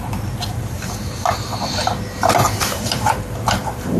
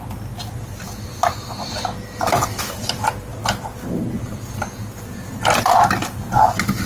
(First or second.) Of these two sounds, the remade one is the first